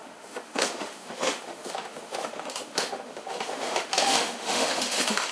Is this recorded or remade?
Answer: remade